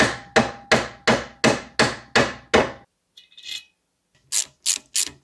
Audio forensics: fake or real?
real